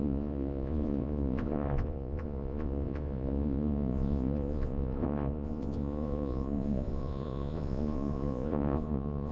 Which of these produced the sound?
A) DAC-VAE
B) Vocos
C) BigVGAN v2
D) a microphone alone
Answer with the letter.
B